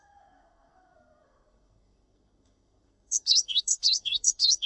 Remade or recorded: remade